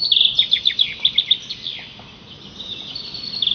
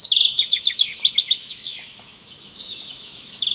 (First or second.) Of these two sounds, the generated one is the second